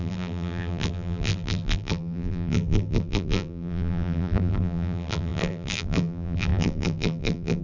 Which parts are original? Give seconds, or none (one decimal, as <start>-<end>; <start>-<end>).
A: none